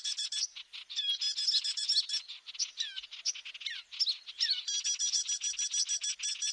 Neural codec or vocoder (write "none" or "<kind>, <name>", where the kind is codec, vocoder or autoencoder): none